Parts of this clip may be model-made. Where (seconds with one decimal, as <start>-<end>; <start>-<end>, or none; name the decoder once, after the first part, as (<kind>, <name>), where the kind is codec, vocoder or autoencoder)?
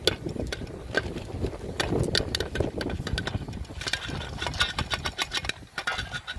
none